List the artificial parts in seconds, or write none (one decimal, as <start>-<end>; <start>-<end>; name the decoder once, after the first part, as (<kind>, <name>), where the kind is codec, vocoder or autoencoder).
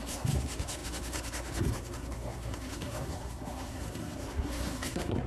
0.0-5.3 (codec, SNAC)